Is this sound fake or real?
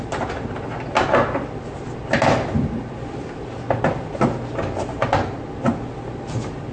real